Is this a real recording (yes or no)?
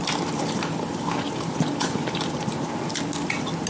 yes